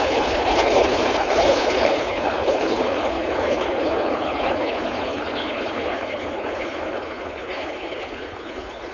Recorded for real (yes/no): no